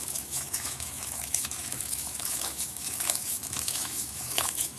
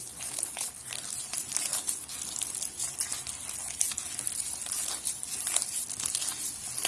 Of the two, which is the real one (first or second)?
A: second